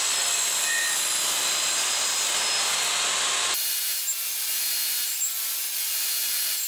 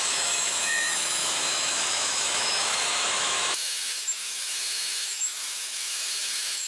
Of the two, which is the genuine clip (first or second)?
first